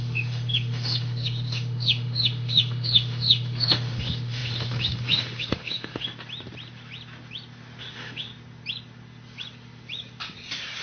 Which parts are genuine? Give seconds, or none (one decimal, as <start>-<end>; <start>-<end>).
6.1-7.8; 8.3-10.8